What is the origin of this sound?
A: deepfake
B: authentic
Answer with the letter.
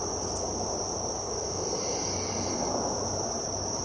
B